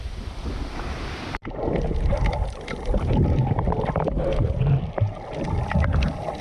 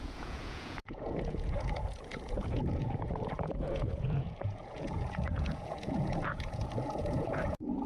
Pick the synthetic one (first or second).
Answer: second